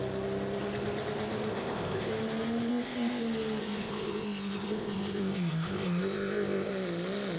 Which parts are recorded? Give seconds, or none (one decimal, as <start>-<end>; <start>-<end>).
0.0-1.5; 2.1-2.7; 3.2-3.6; 6.7-7.4